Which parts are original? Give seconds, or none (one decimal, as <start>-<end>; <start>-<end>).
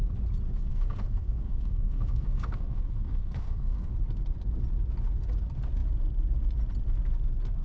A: 0.0-0.7; 3.9-7.6